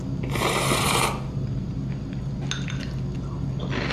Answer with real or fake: real